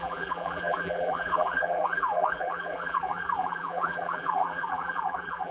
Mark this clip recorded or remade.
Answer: remade